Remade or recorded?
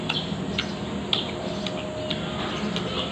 recorded